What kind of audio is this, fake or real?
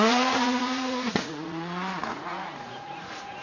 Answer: fake